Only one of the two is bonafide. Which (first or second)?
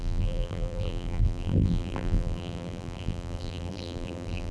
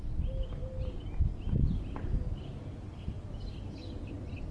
second